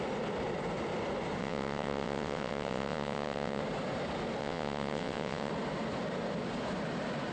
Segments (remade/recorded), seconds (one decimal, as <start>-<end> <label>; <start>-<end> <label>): 0.0-1.4 recorded; 1.4-3.6 remade; 3.6-4.4 recorded; 4.4-5.5 remade; 5.5-7.3 recorded